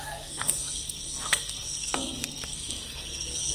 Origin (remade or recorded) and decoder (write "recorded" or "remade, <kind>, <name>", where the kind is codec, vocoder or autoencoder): remade, codec, SNAC